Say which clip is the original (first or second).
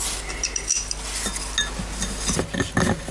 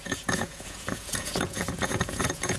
first